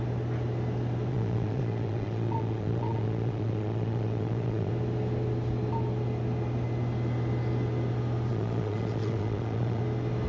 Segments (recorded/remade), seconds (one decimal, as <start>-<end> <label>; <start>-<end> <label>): 0.0-1.1 recorded; 1.1-4.7 remade; 4.7-8.3 recorded; 8.3-9.8 remade; 9.8-10.3 recorded